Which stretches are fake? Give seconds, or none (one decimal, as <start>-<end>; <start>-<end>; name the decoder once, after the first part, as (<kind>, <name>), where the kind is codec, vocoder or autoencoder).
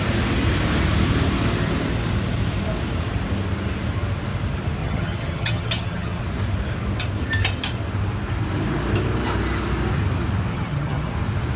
4.8-6.2 (vocoder, HiFi-GAN); 10.5-11.1